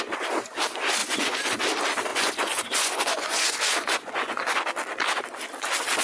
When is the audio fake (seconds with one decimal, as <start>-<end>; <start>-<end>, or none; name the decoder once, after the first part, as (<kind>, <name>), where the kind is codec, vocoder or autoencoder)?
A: 1.0-1.5 (vocoder, Vocos); 2.1-4.6